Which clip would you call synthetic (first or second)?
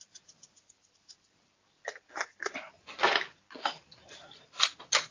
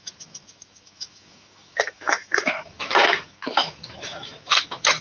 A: second